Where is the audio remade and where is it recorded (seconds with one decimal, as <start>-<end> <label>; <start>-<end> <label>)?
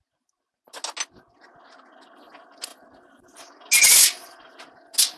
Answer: 0.0-5.2 recorded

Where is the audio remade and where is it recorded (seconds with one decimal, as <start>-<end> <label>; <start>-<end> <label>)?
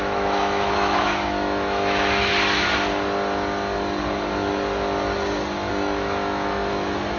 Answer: 0.0-2.3 remade; 2.3-5.7 recorded; 5.7-7.2 remade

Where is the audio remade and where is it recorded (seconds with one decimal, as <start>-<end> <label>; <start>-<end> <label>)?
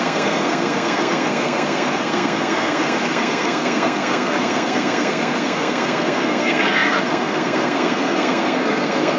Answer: 0.0-9.2 remade